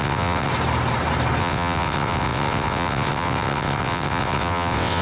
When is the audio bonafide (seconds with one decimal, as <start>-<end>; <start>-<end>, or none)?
0.5-1.4